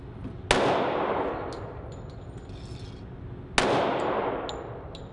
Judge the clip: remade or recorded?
recorded